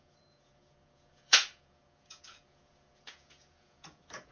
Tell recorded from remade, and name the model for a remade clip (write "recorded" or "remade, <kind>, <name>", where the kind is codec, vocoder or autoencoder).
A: remade, vocoder, Vocos